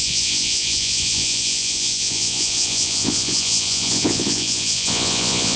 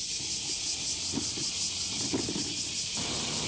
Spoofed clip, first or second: first